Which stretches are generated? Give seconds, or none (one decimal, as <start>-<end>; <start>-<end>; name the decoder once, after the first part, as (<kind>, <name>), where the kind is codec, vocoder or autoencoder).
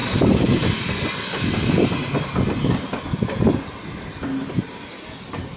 none